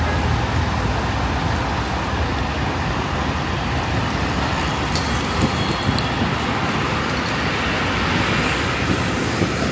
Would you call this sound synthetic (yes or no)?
no